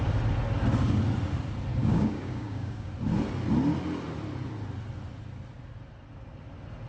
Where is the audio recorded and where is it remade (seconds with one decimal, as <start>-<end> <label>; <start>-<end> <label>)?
0.0-1.8 recorded; 1.8-2.9 remade; 2.9-6.9 recorded